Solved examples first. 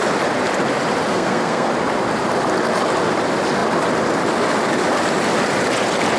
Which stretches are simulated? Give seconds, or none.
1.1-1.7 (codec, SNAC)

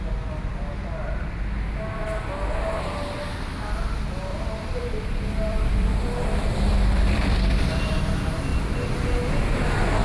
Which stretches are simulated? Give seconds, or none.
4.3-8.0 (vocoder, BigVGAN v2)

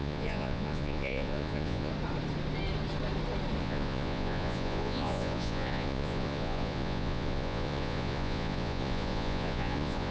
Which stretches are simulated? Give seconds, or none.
0.0-1.9 (vocoder, Vocos); 3.6-10.1

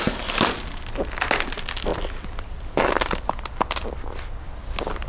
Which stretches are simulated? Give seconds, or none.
none

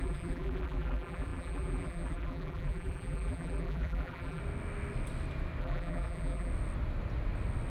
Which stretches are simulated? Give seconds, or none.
0.0-4.4 (vocoder, BigVGAN v2); 5.6-6.5

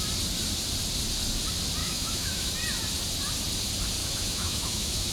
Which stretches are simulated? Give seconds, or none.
1.8-2.5 (autoencoder, DAC-VAE); 4.0-5.1